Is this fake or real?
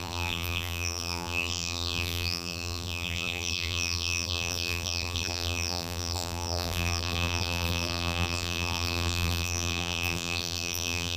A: fake